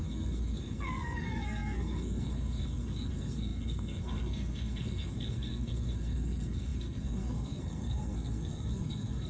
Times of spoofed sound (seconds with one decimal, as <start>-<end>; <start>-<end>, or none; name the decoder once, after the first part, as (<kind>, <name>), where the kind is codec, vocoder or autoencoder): 0.0-9.3 (codec, SNAC)